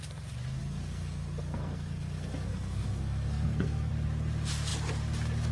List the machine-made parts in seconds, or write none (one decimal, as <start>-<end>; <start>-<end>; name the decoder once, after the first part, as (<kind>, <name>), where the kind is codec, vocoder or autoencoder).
0.6-3.9 (codec, SNAC)